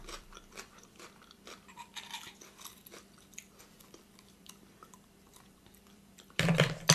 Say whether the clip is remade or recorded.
remade